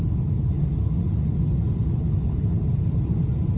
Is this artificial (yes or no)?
no